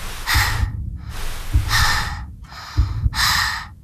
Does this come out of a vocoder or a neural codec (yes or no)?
no